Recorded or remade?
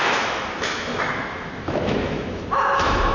remade